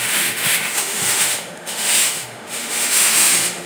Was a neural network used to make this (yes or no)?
yes